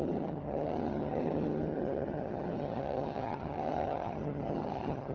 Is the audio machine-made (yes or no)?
yes